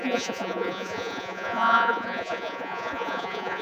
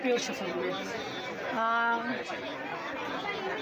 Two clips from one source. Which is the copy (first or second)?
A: first